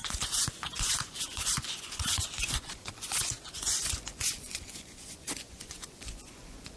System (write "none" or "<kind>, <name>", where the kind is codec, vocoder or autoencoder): vocoder, Vocos